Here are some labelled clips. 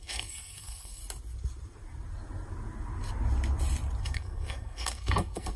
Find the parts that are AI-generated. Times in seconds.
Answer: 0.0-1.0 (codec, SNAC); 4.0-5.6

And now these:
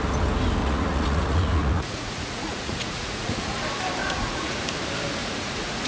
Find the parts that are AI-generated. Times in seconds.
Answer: 0.6-3.6 (vocoder, Vocos); 4.0-4.6; 5.2-5.9

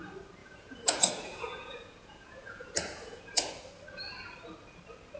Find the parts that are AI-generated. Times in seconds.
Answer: 0.4-3.5 (vocoder, Vocos)

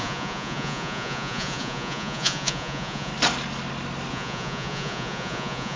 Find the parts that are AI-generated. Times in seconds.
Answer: 0.0-3.1 (vocoder, Vocos); 4.1-5.8

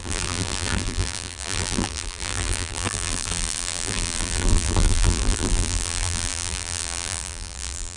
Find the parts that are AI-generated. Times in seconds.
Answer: 0.0-8.0 (vocoder, BigVGAN v2)

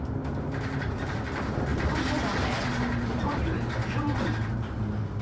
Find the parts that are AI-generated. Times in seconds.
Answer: none

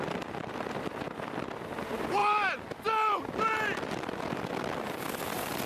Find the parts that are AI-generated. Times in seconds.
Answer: 2.2-3.2 (vocoder, BigVGAN v2)

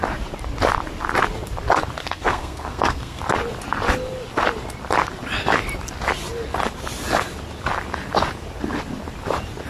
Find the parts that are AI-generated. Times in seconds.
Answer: 2.0-3.2 (codec, SNAC)